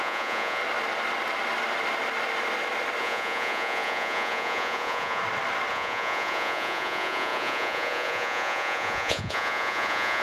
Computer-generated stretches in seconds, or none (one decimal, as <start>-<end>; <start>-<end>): 0.0-0.6; 3.0-5.2; 5.7-10.2